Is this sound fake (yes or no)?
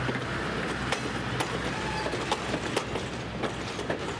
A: no